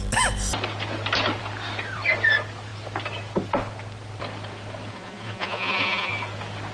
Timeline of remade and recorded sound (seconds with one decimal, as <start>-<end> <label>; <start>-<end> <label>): 0.0-4.9 recorded; 4.9-6.1 remade; 6.1-6.7 recorded